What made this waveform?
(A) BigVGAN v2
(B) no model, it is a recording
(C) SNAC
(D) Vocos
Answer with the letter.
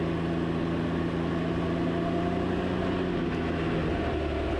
B